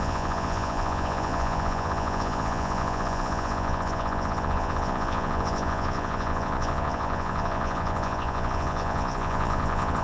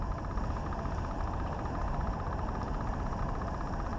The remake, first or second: first